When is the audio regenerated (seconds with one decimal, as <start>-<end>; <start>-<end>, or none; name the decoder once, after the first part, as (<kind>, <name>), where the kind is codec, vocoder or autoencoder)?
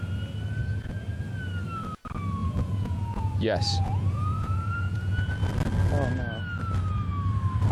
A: 0.6-1.2 (vocoder, Vocos); 2.4-5.3